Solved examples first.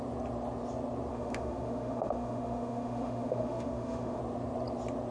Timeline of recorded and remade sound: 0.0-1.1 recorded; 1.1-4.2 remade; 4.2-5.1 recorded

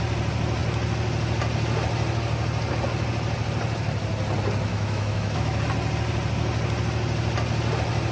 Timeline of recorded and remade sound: 0.0-4.7 recorded; 4.7-5.6 remade; 5.6-8.1 recorded

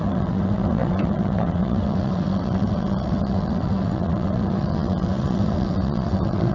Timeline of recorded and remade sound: 0.0-6.5 remade

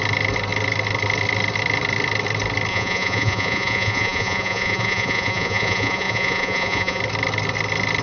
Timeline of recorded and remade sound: 0.0-2.7 recorded; 2.7-7.0 remade; 7.0-8.0 recorded

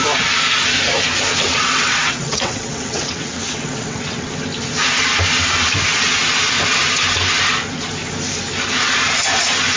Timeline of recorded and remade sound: 0.0-1.5 recorded; 1.5-4.3 remade; 4.3-9.8 recorded

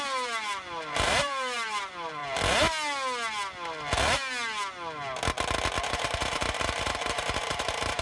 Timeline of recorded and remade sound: 0.0-2.2 remade; 2.2-5.9 recorded; 5.9-8.0 remade